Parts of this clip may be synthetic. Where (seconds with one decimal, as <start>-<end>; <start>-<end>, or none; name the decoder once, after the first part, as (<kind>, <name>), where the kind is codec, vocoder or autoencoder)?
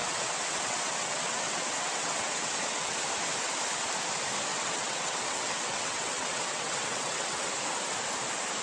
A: 0.0-2.9 (vocoder, WaveNeXt); 4.5-7.5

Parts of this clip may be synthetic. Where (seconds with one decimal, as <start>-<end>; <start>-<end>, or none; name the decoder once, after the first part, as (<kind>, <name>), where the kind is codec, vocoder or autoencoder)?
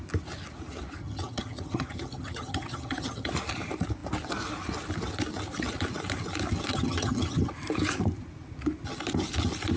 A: 1.0-3.3 (vocoder, HiFi-GAN); 6.7-7.5